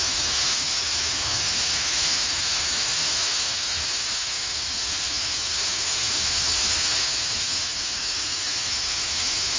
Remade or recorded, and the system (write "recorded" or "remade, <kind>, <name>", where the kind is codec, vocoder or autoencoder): remade, autoencoder, DAC-VAE